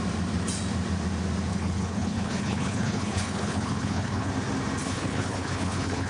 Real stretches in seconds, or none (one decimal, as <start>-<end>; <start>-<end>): 0.0-1.5; 4.3-4.8